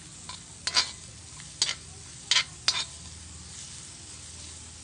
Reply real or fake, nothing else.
real